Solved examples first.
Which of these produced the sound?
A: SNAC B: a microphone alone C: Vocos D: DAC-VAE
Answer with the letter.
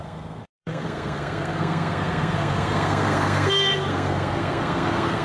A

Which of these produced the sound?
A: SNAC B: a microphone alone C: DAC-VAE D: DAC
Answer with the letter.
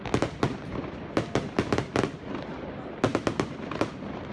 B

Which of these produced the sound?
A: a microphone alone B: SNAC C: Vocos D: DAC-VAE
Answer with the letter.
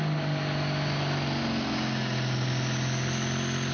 A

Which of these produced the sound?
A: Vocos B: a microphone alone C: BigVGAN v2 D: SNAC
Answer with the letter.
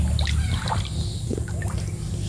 B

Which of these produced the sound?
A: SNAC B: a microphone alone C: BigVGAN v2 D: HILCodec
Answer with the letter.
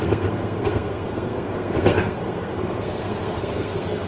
A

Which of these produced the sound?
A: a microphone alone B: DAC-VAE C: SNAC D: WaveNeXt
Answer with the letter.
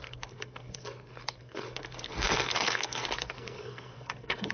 C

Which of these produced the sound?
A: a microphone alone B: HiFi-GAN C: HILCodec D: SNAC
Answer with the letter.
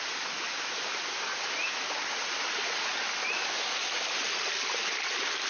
A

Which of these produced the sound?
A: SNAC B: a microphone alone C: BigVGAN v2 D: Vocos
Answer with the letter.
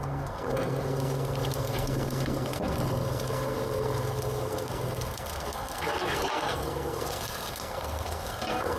A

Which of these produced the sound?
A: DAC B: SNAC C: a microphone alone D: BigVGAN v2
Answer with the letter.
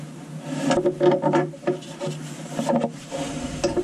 C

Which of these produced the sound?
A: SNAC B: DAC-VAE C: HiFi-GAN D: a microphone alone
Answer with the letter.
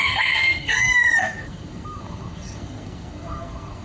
A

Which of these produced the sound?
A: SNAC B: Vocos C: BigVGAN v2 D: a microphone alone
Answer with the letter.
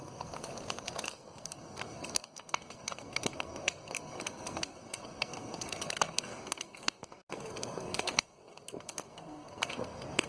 A